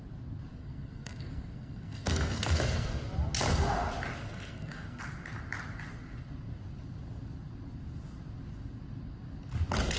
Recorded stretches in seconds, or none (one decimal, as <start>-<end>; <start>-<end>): 0.0-0.5; 3.0-4.2; 5.0-10.0